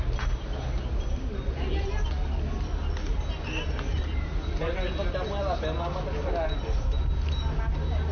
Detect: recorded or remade recorded